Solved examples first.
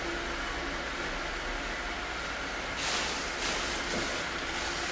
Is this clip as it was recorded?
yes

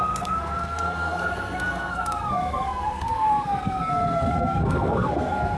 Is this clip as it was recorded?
no